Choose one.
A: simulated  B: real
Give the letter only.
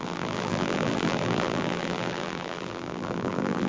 A